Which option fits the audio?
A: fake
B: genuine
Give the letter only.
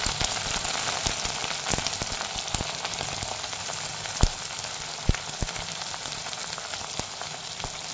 B